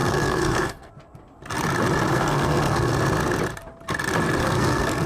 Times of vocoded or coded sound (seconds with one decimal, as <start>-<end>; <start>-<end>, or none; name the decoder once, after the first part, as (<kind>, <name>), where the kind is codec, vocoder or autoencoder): 0.0-0.9 (codec, SNAC); 2.1-2.9; 4.4-5.1